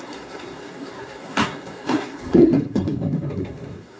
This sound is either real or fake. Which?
fake